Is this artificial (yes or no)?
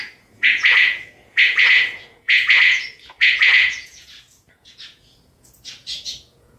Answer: yes